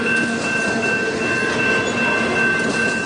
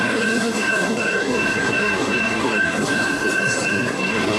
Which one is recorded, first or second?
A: first